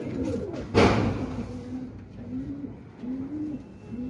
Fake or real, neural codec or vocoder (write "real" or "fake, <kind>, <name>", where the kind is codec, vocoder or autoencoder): real